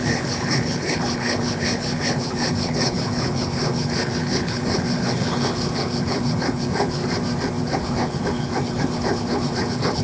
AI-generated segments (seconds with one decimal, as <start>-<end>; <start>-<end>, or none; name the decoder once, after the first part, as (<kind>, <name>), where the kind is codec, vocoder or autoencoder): 0.0-7.0 (codec, HILCodec); 7.6-10.0